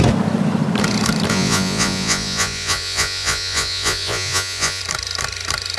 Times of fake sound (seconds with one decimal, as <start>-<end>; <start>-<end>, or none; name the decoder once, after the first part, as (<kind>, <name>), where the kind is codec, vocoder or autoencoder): 1.3-4.8 (vocoder, Vocos)